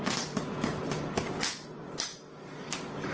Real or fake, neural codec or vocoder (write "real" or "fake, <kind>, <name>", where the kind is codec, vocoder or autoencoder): real